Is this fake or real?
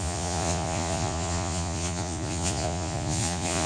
fake